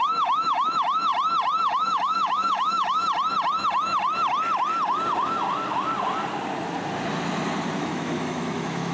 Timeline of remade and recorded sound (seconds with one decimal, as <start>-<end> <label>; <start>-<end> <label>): 0.0-1.1 remade; 1.1-1.6 recorded; 1.6-3.0 remade; 3.0-7.8 recorded; 7.8-8.9 remade